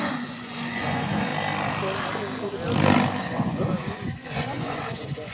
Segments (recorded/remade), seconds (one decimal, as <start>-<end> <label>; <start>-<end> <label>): 0.0-1.3 remade; 1.3-3.2 recorded; 3.2-5.3 remade